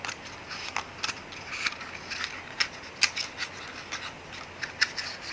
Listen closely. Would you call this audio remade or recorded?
recorded